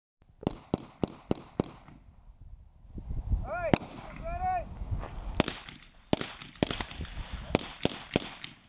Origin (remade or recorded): recorded